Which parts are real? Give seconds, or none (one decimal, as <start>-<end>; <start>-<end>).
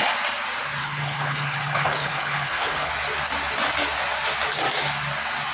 0.0-0.8; 2.9-5.5